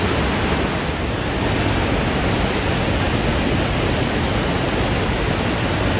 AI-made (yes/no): no